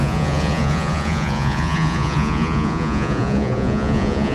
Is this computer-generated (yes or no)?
yes